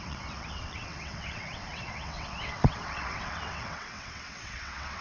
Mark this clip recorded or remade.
remade